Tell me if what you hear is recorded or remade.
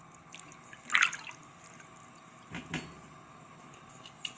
recorded